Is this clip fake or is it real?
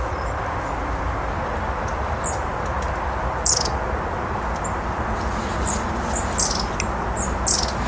real